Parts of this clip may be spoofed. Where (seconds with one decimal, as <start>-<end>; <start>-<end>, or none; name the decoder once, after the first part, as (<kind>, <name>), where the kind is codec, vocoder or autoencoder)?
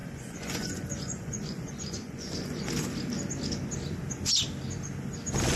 0.0-2.7 (vocoder, Vocos)